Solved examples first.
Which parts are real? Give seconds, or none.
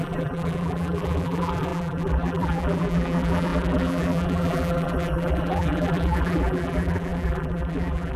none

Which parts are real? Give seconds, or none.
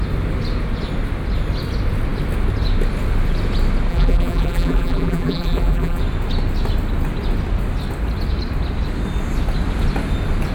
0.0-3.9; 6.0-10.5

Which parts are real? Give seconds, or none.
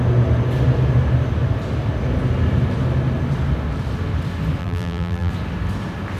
0.0-4.6; 5.3-6.2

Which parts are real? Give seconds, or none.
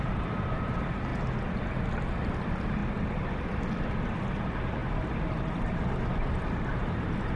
1.1-2.4; 2.8-4.2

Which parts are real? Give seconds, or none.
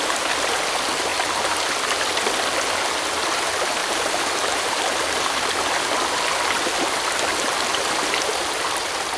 0.0-1.1; 1.7-3.8; 5.5-7.3; 7.9-9.2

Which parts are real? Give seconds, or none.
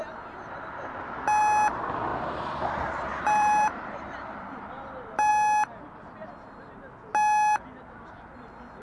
0.0-2.1; 4.5-8.8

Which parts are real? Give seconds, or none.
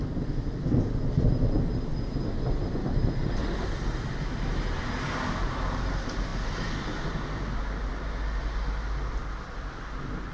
0.0-9.2; 9.7-10.3